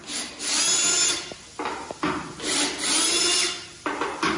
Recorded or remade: recorded